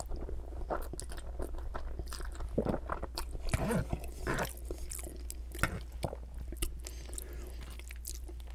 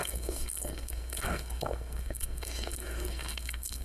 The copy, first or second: second